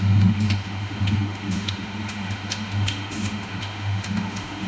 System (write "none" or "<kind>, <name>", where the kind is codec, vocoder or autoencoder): autoencoder, DAC-VAE